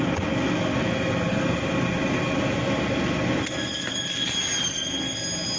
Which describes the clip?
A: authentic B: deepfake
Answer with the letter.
A